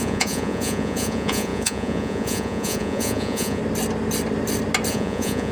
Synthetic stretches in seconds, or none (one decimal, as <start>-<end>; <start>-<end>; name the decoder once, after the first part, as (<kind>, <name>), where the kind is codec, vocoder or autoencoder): 0.0-3.6 (vocoder, Vocos); 4.9-5.5